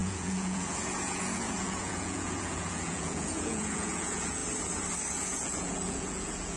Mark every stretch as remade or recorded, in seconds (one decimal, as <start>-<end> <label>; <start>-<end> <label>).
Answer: 0.0-4.4 remade; 4.4-5.1 recorded; 5.1-6.6 remade